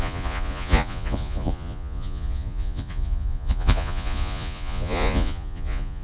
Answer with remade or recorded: remade